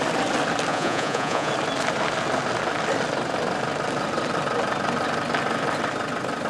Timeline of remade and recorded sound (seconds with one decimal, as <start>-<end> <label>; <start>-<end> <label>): 0.0-0.7 recorded; 0.7-1.5 remade; 1.5-6.5 recorded